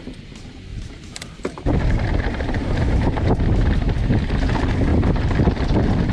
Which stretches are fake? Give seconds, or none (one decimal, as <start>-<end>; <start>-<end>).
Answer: 0.7-3.3